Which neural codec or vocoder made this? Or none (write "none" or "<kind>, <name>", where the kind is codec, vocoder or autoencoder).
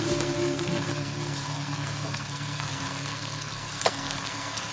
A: codec, SNAC